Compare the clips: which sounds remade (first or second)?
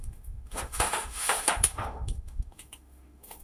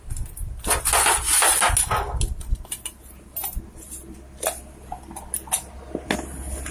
first